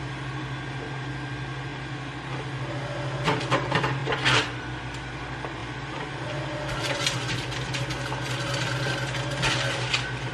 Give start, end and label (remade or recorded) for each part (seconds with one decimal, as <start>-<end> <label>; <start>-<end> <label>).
0.0-10.3 recorded